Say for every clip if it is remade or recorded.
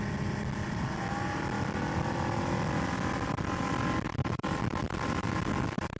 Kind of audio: recorded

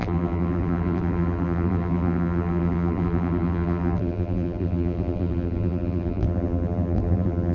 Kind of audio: remade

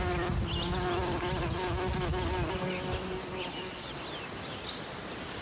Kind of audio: recorded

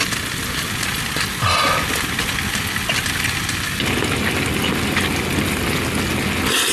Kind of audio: recorded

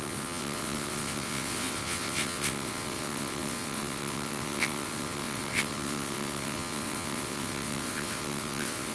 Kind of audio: remade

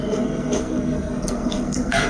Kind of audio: remade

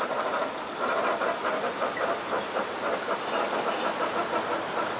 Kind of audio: remade